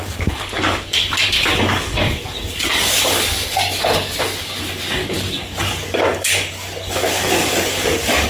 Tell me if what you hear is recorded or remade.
remade